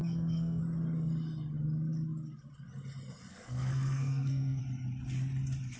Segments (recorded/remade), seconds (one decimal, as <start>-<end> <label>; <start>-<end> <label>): 0.0-0.6 remade; 0.6-3.3 recorded; 3.3-4.6 remade; 4.6-5.8 recorded